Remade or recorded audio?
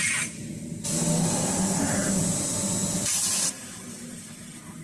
recorded